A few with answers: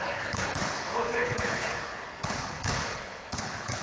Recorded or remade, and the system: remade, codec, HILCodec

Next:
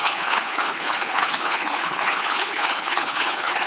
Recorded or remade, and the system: remade, codec, HILCodec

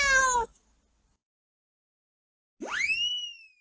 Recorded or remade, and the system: recorded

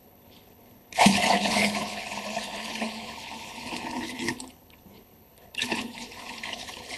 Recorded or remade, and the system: remade, codec, HILCodec